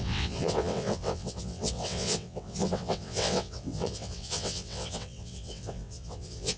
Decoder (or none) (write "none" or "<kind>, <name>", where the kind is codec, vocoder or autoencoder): vocoder, WaveNeXt